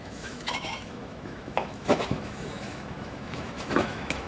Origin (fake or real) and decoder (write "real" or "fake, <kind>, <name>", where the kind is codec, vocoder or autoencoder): fake, autoencoder, DAC-VAE